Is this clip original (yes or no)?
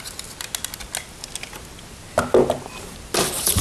yes